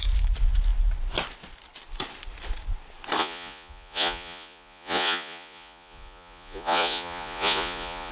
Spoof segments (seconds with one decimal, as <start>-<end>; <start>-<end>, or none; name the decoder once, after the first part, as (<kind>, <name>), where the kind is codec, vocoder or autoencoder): 3.2-8.1 (vocoder, Vocos)